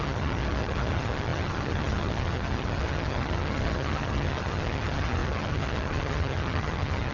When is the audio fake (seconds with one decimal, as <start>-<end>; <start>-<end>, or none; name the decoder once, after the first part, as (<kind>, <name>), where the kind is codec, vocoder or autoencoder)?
0.0-7.1 (vocoder, HiFi-GAN)